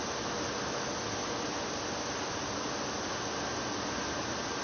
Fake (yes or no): no